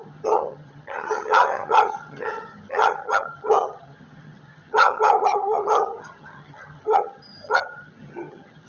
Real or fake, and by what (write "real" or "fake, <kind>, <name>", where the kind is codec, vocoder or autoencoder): fake, vocoder, HiFi-GAN